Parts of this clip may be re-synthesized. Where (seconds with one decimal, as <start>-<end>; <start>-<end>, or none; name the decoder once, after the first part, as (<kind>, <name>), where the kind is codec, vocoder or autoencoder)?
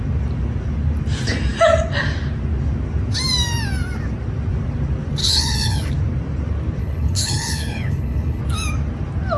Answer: 5.2-5.9 (codec, HILCodec); 6.8-8.4